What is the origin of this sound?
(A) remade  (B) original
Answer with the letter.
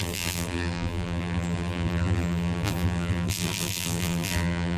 A